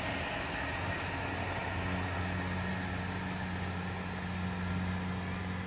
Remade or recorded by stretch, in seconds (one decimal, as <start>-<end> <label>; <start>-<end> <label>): 0.0-5.7 recorded